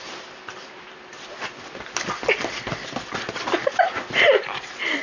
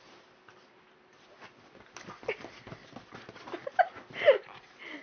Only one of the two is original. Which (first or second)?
second